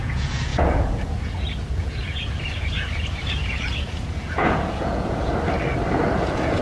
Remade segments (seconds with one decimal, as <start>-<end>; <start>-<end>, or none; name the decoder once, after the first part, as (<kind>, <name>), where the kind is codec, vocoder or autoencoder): 0.0-5.3 (vocoder, Vocos); 5.9-6.6